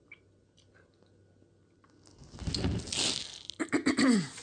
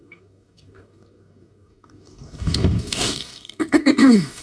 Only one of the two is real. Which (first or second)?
first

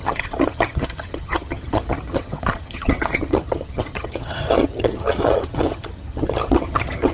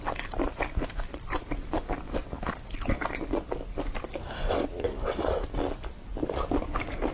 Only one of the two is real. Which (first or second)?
second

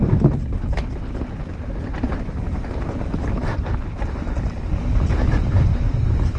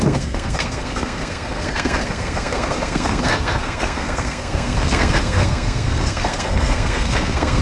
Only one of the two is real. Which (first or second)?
first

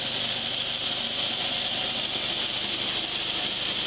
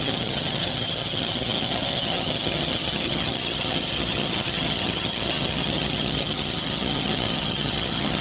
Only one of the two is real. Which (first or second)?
first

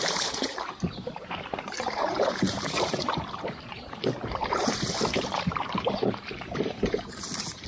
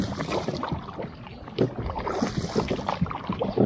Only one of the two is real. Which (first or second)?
second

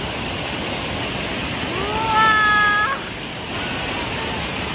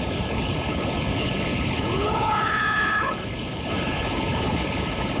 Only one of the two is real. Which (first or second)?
first